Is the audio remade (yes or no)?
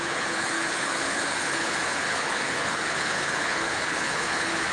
yes